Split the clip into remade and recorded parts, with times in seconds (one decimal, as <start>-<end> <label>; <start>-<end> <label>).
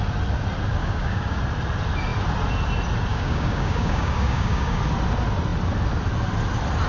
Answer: 0.0-0.8 recorded; 0.8-1.4 remade; 1.4-3.1 recorded; 3.1-4.8 remade; 4.8-6.9 recorded